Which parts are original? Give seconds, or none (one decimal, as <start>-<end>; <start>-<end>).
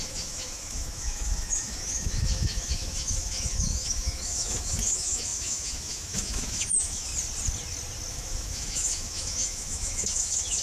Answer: 7.1-8.1